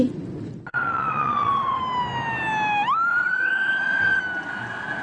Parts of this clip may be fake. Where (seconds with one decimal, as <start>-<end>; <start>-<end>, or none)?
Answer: 0.7-1.8; 3.1-4.2